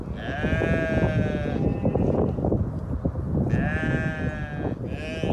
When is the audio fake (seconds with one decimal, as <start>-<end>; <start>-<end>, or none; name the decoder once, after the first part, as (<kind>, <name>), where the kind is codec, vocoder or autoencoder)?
none